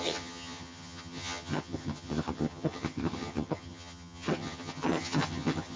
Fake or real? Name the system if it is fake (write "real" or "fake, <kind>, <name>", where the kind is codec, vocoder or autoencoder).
fake, vocoder, HiFi-GAN